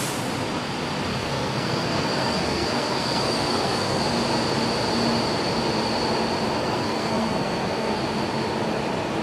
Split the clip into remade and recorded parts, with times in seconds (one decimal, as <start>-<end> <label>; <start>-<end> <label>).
0.0-1.1 recorded; 1.1-4.0 remade; 4.0-6.6 recorded; 6.6-8.0 remade; 8.0-9.2 recorded